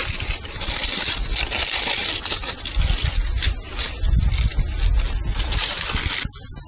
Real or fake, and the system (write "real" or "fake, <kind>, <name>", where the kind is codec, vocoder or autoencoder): real